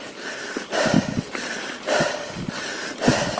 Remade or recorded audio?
recorded